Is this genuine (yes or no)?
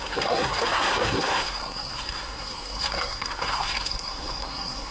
no